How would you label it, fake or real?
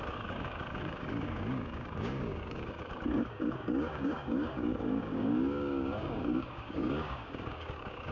fake